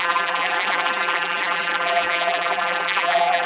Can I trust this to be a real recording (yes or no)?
no